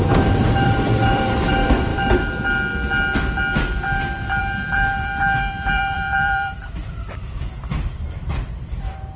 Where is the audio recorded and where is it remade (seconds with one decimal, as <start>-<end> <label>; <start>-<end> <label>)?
0.0-1.9 remade; 1.9-4.4 recorded; 4.4-9.2 remade